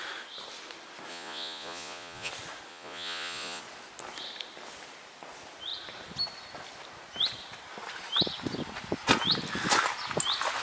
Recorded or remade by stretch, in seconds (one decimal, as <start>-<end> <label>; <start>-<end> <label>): 0.0-1.1 recorded; 1.1-2.3 remade; 2.3-2.7 recorded; 2.7-3.6 remade; 3.6-10.6 recorded